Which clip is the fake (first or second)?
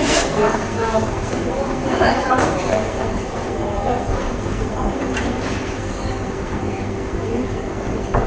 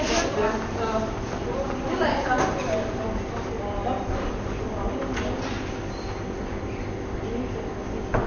first